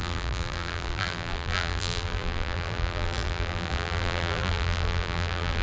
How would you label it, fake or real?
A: fake